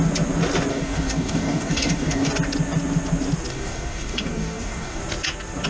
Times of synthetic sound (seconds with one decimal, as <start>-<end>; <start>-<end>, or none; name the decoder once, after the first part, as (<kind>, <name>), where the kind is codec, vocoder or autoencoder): 0.7-2.3 (codec, DAC); 3.5-5.0